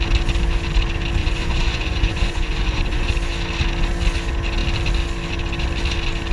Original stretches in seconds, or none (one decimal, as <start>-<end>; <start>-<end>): 0.0-1.2; 3.1-6.3